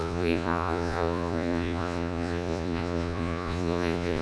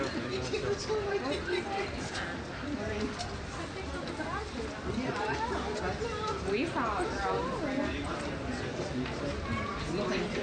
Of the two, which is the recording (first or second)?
second